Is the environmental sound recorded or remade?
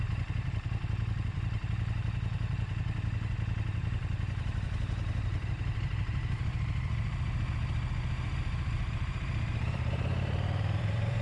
remade